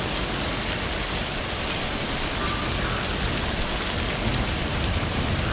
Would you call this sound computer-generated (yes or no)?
no